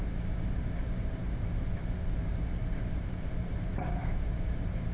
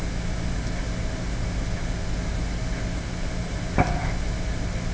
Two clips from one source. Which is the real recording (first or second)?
second